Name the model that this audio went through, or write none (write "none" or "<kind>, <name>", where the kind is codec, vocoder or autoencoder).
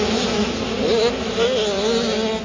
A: none